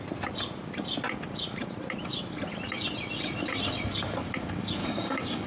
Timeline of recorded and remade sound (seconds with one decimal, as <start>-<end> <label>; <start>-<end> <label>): 0.0-4.8 recorded; 4.8-5.5 remade